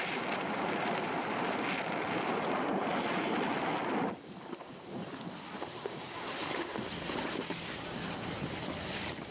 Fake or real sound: real